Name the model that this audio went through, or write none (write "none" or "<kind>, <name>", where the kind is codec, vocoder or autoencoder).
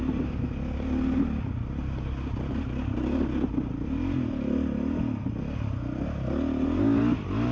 none